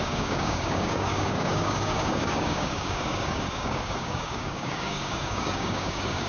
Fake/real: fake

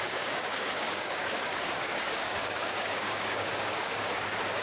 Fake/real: fake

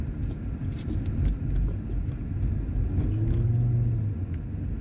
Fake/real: real